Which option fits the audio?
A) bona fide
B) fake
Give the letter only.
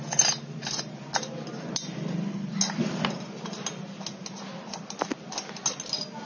A